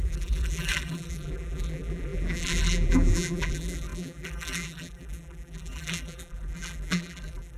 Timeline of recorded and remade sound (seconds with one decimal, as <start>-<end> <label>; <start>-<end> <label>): 0.0-7.6 remade